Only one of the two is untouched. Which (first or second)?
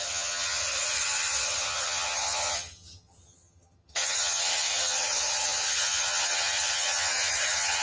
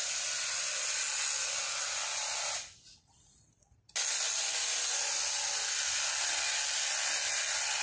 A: second